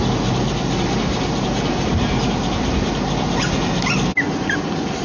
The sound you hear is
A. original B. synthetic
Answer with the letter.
A